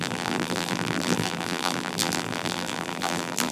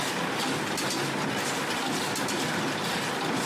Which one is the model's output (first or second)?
first